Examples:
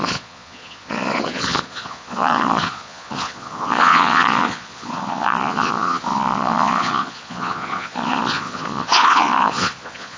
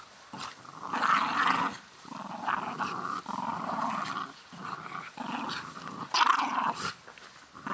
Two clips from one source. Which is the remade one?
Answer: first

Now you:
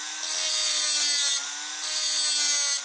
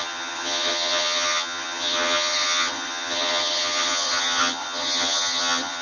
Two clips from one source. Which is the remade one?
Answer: second